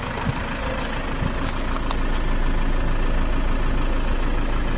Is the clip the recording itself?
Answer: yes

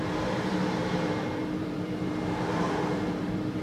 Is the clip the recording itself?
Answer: no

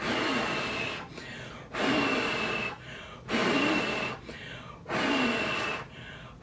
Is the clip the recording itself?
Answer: yes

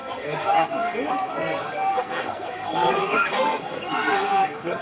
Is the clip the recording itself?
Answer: no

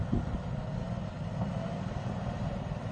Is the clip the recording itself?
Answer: yes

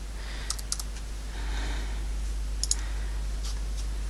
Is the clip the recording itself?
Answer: yes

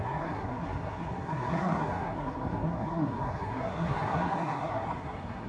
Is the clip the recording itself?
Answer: no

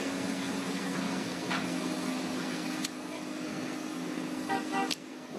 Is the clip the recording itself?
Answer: no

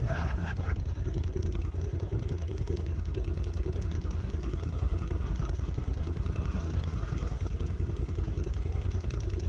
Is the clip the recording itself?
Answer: no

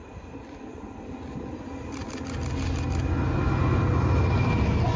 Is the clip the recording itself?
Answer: yes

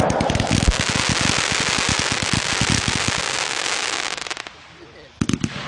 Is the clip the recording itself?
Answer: yes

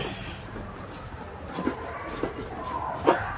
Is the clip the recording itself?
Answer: yes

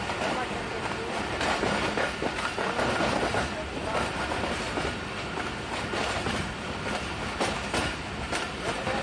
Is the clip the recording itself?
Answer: yes